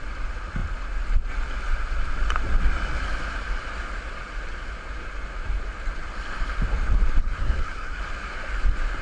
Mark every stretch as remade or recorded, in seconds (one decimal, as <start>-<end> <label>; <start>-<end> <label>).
0.0-7.2 recorded; 7.2-8.0 remade; 8.0-9.0 recorded